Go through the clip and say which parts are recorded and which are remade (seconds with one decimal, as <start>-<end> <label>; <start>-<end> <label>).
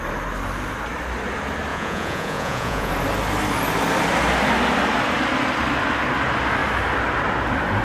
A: 0.0-1.7 recorded; 1.7-2.9 remade; 2.9-7.8 recorded